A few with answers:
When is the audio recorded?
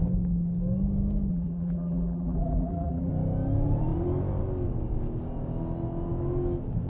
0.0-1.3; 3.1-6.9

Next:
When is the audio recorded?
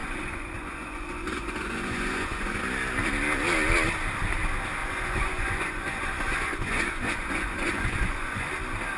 2.6-4.8; 8.5-9.0